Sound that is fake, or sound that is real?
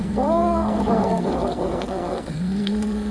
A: fake